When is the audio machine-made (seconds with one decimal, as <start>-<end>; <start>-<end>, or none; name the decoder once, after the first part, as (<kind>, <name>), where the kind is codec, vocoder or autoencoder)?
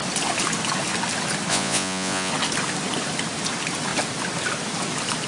1.5-2.3 (vocoder, Vocos)